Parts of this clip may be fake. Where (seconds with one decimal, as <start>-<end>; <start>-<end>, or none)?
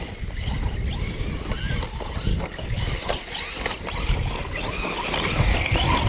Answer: 2.3-2.9